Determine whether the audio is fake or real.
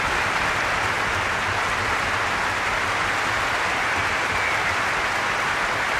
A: real